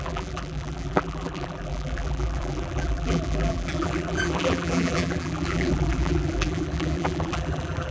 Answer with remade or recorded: remade